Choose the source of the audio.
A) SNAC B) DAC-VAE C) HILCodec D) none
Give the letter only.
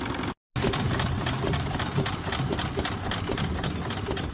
D